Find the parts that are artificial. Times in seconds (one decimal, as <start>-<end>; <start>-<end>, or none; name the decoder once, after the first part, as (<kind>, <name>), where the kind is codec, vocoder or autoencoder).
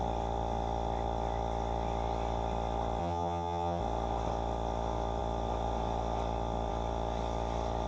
3.0-3.8 (vocoder, HiFi-GAN)